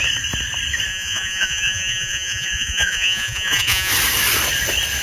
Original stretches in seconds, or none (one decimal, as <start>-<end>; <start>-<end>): 0.0-0.9; 3.9-5.0